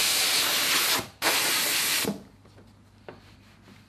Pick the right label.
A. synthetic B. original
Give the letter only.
B